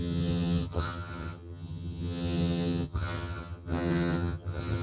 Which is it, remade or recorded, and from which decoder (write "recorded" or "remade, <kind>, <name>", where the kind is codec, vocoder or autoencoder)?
remade, vocoder, HiFi-GAN